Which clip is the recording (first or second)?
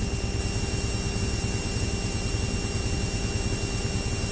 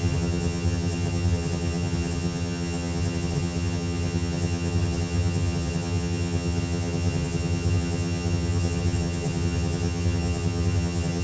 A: first